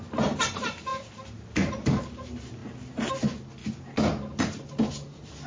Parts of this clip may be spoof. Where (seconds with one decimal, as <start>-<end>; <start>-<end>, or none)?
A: none